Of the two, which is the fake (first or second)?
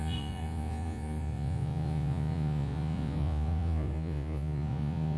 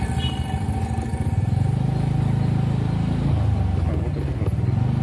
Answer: first